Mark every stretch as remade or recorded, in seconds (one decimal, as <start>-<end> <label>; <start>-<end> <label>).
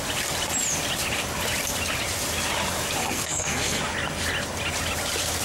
0.0-3.0 recorded; 3.0-3.8 remade; 3.8-5.4 recorded